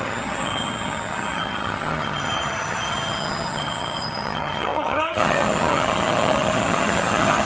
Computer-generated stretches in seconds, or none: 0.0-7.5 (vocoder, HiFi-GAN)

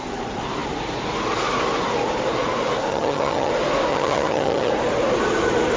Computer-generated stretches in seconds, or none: 2.9-3.5 (vocoder, HiFi-GAN); 3.9-4.7

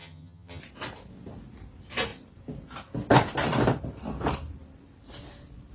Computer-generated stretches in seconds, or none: 0.0-0.6 (vocoder, HiFi-GAN)

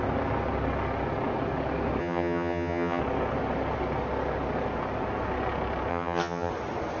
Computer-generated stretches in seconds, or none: 2.0-3.0 (vocoder, HiFi-GAN); 5.9-6.5

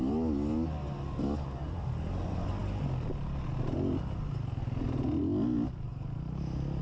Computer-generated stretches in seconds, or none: none

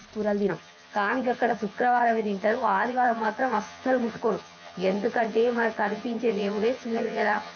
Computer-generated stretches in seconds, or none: 0.5-7.6 (vocoder, HiFi-GAN)

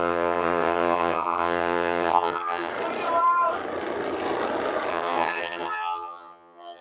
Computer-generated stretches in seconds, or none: 0.0-2.7 (vocoder, HiFi-GAN); 4.9-6.8

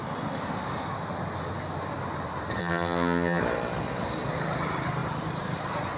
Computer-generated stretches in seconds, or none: 2.6-3.4 (vocoder, HiFi-GAN)